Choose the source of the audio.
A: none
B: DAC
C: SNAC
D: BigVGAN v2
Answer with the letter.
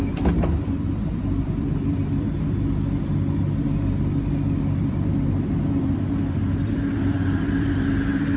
D